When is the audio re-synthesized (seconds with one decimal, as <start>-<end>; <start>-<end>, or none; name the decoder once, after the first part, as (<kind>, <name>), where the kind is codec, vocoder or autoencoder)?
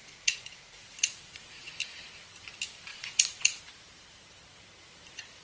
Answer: 0.0-1.7 (vocoder, Vocos); 2.9-3.6